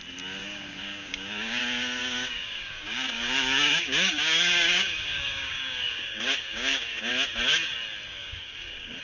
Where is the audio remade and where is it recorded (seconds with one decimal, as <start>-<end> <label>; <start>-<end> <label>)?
0.0-0.4 recorded; 0.4-1.6 remade; 1.6-2.0 recorded; 2.0-7.1 remade; 7.1-8.2 recorded; 8.2-9.0 remade